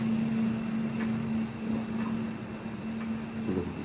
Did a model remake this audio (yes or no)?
no